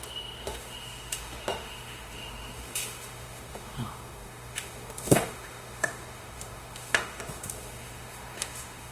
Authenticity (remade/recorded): remade